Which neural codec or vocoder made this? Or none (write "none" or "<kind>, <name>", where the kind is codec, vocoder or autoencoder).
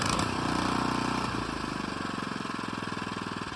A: none